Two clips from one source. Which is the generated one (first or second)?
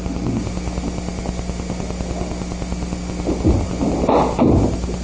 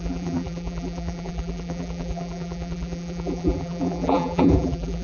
second